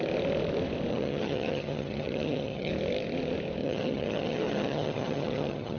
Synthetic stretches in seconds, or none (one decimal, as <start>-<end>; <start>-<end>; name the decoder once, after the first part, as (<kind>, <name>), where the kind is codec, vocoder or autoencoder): 0.9-2.7 (vocoder, HiFi-GAN); 3.6-5.8